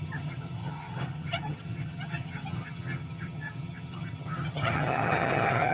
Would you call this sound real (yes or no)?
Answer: no